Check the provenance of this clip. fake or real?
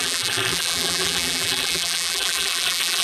fake